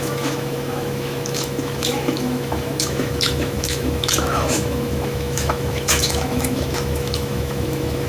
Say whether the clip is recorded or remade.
remade